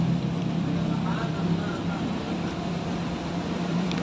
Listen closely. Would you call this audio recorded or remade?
remade